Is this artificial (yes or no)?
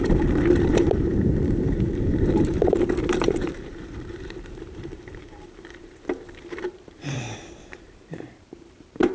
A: yes